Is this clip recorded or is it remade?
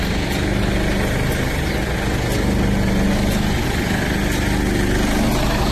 recorded